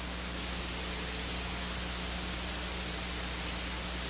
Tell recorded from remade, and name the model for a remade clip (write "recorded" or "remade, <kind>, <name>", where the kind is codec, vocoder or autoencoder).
recorded